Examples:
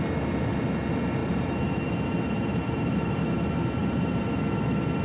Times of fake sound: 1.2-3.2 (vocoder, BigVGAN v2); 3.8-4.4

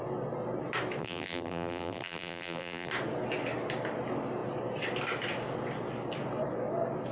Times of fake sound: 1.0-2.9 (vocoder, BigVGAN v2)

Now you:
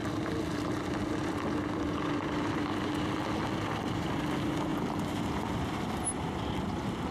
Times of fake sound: none

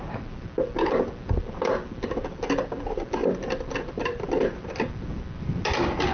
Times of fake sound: none

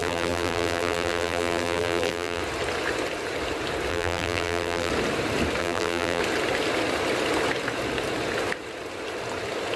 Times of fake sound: 0.0-2.4 (vocoder, BigVGAN v2); 3.9-4.9; 5.6-6.2